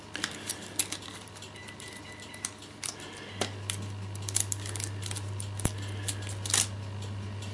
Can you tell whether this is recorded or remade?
recorded